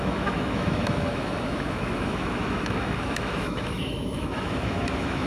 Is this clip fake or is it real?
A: fake